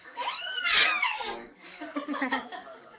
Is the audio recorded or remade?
remade